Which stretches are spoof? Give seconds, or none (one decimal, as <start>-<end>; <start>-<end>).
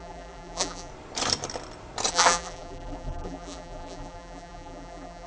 0.0-0.9; 2.1-5.3